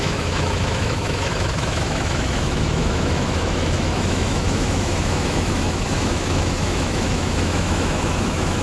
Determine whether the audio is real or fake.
fake